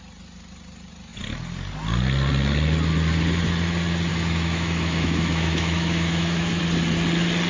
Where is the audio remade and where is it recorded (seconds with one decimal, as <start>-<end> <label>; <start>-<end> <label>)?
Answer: 0.0-4.1 recorded; 4.1-6.6 remade; 6.6-7.5 recorded

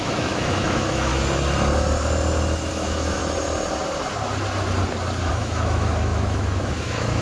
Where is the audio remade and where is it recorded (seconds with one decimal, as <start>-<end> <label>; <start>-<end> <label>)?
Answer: 0.0-1.1 remade; 1.1-2.7 recorded; 2.7-3.2 remade; 3.2-5.3 recorded; 5.3-7.2 remade

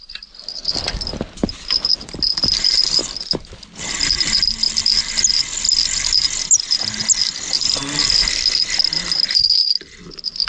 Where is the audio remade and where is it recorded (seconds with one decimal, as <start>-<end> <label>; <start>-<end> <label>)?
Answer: 0.0-10.5 recorded

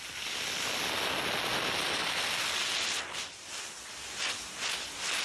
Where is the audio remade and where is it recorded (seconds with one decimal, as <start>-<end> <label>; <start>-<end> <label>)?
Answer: 0.0-5.2 recorded

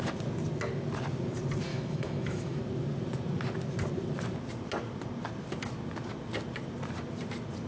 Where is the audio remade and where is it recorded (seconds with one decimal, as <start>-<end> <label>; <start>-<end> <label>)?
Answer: 0.0-1.7 recorded; 1.7-2.6 remade; 2.6-7.7 recorded

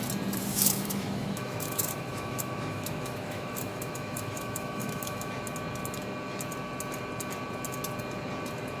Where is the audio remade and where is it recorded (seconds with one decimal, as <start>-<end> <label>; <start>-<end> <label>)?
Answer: 0.0-0.5 recorded; 0.5-5.4 remade; 5.4-8.8 recorded

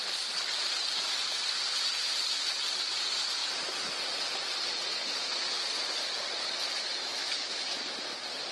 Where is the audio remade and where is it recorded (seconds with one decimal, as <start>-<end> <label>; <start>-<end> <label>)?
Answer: 0.0-6.9 recorded; 6.9-7.8 remade; 7.8-8.5 recorded

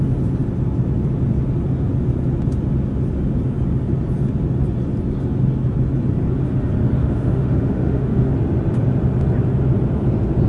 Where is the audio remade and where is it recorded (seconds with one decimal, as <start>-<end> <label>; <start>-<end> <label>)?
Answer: 0.0-7.0 recorded; 7.0-8.3 remade; 8.3-10.5 recorded